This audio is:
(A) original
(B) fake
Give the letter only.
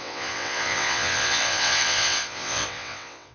B